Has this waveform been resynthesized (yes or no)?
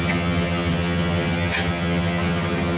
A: yes